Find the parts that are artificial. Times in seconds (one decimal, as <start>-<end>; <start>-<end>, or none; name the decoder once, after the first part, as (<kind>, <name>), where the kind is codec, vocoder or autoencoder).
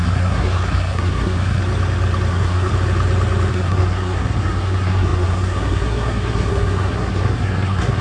0.0-1.6 (codec, SNAC); 2.3-2.7; 3.5-8.0